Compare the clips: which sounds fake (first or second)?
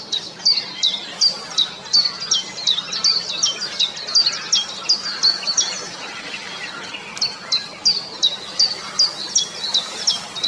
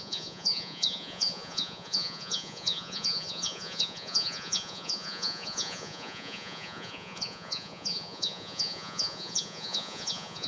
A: second